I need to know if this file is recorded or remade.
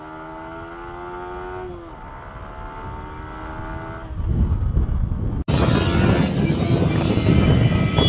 recorded